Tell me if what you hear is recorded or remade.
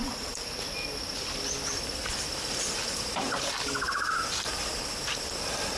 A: remade